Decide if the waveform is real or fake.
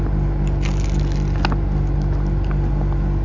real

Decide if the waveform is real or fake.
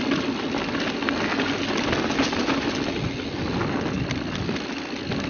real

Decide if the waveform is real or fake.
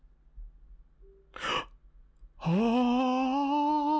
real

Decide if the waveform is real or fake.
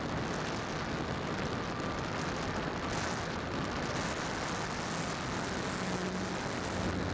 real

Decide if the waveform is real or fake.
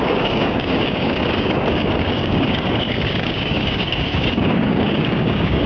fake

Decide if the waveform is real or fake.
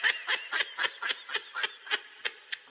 real